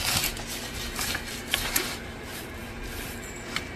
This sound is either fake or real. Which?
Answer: fake